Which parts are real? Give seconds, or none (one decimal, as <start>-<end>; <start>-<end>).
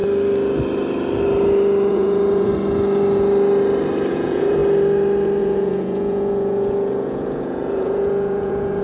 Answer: 0.0-1.9; 2.5-4.1; 4.6-5.4